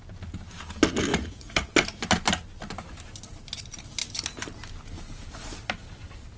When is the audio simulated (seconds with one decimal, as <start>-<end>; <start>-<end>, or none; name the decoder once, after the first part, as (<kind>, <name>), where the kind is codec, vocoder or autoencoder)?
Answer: 1.1-1.7 (vocoder, Vocos)

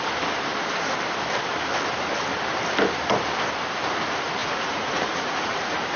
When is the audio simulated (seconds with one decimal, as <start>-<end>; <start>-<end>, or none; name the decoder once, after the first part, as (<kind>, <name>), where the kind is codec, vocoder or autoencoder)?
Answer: 4.4-6.0 (vocoder, Vocos)

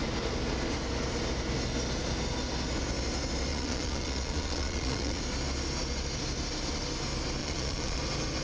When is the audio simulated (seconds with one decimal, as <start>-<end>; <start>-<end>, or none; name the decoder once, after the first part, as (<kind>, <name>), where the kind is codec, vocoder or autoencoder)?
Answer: 3.5-5.2 (vocoder, Vocos); 7.4-8.0